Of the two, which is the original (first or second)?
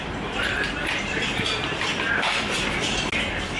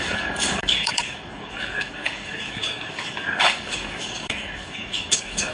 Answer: first